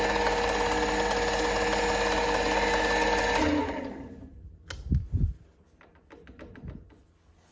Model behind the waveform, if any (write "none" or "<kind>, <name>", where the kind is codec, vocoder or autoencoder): none